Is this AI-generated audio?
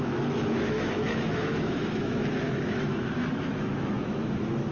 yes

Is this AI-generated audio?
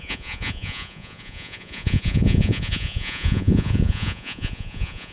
yes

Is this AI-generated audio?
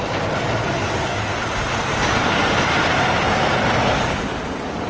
yes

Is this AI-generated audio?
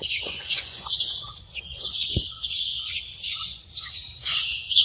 yes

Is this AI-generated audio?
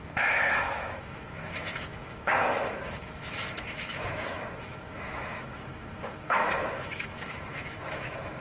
yes